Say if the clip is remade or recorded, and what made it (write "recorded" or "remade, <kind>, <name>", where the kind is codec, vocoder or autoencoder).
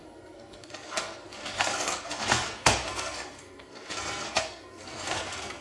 remade, codec, SNAC